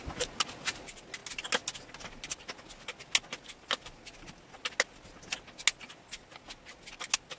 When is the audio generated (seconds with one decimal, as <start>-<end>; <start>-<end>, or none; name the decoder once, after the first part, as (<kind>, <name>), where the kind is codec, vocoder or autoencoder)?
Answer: none